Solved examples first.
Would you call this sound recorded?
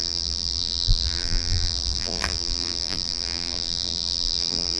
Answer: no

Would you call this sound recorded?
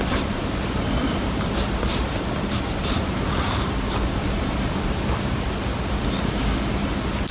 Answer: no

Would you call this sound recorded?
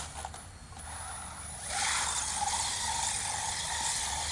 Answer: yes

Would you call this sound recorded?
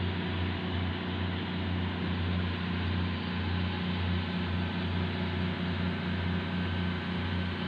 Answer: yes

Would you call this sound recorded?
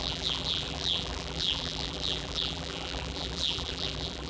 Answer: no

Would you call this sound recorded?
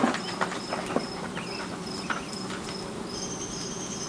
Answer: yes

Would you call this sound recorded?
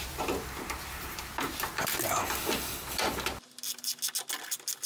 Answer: yes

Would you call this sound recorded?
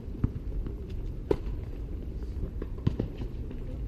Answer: no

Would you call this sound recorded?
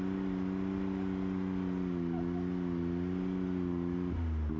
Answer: yes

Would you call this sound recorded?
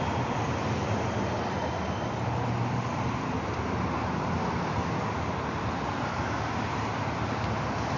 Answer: yes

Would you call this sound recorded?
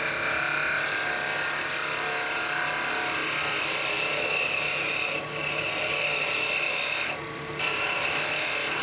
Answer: yes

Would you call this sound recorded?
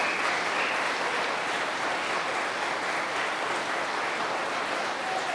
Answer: yes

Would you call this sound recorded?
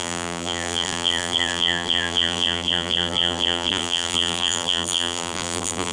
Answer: no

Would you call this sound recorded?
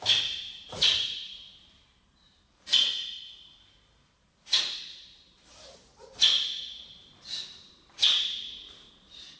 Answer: no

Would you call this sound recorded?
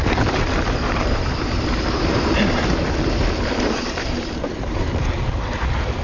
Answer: no